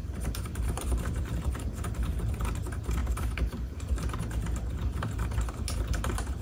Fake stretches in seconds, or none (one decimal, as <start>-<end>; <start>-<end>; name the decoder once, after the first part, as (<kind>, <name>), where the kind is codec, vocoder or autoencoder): 0.0-1.5 (vocoder, BigVGAN v2); 3.0-4.2